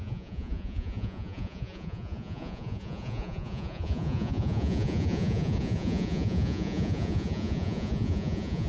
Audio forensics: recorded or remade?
remade